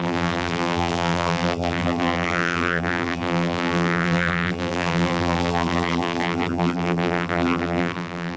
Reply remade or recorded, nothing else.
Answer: remade